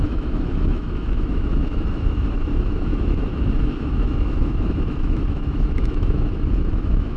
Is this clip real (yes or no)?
no